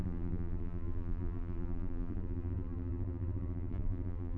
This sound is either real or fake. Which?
fake